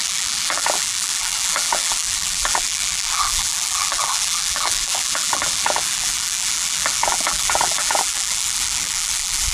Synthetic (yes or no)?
yes